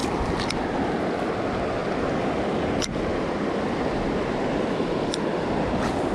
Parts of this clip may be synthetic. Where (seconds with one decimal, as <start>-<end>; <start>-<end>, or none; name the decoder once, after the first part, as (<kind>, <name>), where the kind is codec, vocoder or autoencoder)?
none